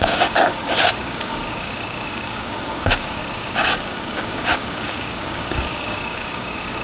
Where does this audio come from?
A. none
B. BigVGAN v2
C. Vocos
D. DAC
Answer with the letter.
D